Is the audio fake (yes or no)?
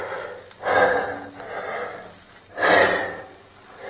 no